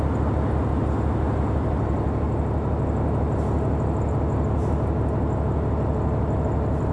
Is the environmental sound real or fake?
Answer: real